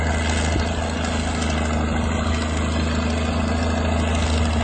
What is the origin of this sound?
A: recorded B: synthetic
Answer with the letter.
A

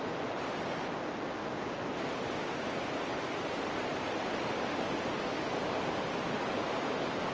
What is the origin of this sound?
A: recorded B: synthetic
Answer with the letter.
A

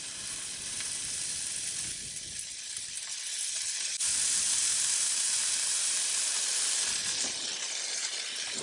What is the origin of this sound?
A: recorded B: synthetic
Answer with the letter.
A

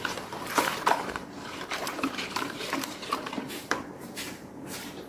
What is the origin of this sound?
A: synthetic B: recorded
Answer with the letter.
A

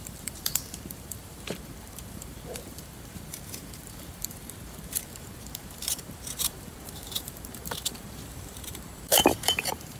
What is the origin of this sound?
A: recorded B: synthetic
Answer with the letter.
B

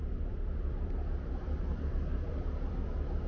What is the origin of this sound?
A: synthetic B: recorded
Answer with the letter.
A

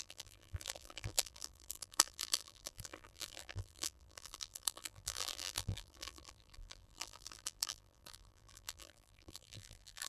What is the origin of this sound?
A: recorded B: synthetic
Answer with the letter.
B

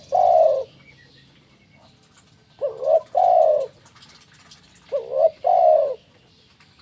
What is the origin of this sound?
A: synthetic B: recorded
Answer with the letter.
A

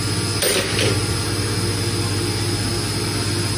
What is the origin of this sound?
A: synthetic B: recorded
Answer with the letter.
B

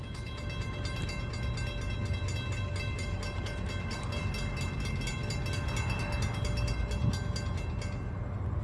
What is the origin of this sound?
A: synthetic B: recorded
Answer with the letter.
B